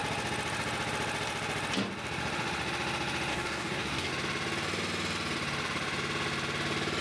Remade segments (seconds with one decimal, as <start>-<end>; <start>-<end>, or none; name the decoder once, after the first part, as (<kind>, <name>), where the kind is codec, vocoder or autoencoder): 3.3-4.1 (codec, DAC)